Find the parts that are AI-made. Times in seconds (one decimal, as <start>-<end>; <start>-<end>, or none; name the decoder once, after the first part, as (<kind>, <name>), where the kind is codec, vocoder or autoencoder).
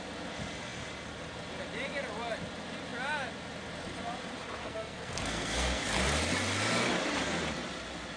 4.6-6.0 (codec, SNAC)